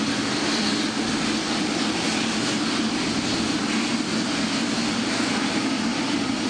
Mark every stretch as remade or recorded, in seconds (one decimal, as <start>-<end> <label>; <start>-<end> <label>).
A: 0.0-5.9 recorded; 5.9-6.5 remade